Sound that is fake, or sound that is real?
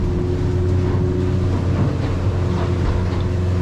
real